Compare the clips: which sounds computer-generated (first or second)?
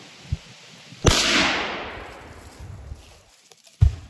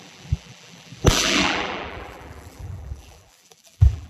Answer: second